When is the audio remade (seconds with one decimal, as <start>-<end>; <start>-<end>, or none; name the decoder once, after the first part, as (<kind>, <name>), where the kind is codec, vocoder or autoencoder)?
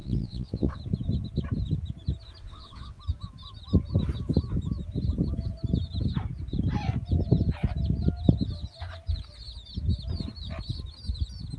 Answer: 0.0-0.8 (vocoder, WaveNeXt); 2.4-3.0